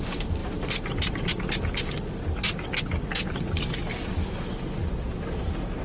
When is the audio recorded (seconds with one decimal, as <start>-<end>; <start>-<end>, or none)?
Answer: 0.0-5.8